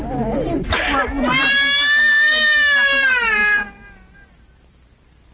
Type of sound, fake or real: real